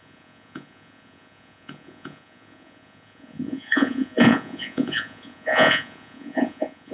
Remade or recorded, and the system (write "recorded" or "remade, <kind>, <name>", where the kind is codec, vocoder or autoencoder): remade, vocoder, Vocos